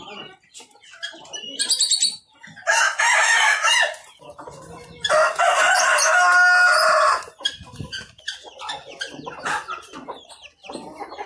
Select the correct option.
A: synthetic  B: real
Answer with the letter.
B